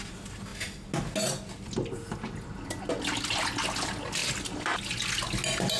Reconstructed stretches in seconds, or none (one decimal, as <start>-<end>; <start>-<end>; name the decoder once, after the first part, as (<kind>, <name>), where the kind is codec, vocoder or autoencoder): none